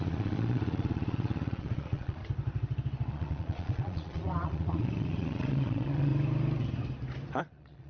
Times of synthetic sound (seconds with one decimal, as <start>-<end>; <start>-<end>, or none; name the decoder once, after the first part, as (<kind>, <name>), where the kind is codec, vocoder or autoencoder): 0.0-2.2 (vocoder, Vocos); 3.1-6.1; 7.4-7.9

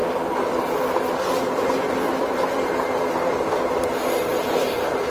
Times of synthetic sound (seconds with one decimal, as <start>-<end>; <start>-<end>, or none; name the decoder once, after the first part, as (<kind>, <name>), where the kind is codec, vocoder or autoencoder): 3.1-4.3 (vocoder, BigVGAN v2)

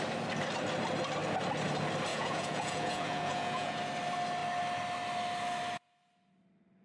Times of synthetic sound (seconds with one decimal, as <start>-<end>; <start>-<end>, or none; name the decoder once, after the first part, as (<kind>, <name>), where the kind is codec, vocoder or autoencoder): 2.1-3.8 (vocoder, Vocos)

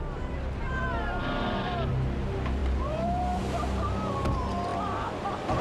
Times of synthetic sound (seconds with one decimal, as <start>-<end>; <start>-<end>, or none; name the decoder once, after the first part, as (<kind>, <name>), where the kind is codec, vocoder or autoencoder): 1.2-1.9 (vocoder, BigVGAN v2); 2.6-3.4; 4.7-5.6

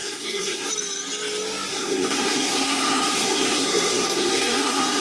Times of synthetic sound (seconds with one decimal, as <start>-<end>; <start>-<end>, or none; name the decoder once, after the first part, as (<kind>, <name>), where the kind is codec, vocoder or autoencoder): 0.0-0.7 (codec, SNAC); 1.7-5.0

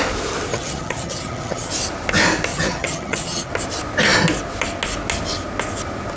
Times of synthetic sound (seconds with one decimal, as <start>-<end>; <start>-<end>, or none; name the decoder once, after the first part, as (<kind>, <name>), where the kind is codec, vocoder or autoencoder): 0.5-1.7 (vocoder, HiFi-GAN); 2.5-3.5